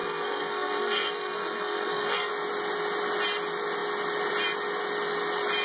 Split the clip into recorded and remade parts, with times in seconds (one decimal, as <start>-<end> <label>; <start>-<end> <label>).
0.0-2.3 remade; 2.3-5.6 recorded